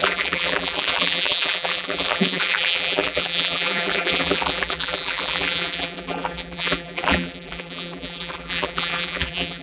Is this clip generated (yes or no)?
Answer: yes